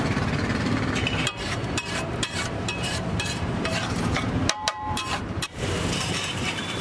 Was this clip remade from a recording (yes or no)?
yes